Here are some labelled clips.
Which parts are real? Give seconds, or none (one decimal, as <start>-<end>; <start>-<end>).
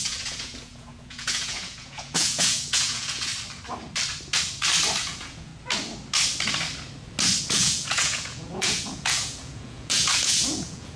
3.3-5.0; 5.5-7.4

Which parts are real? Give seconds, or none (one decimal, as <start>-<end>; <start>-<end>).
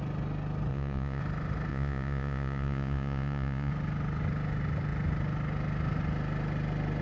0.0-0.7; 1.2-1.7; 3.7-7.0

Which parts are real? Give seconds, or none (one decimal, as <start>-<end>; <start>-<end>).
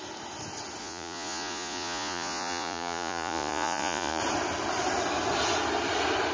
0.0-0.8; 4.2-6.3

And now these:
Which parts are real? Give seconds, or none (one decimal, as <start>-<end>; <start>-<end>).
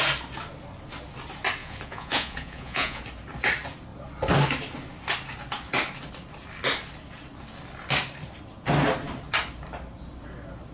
0.0-1.6; 3.0-10.7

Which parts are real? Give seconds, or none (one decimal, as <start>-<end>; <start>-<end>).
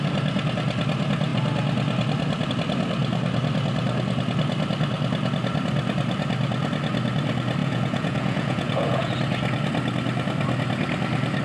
0.0-7.6; 9.1-11.4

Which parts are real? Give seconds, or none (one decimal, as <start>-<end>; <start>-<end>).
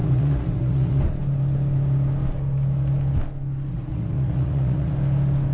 1.0-3.7; 4.9-5.5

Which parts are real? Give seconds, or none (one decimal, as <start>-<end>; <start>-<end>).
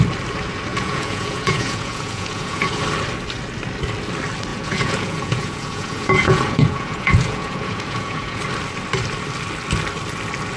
0.0-0.7; 2.8-4.5; 8.4-10.6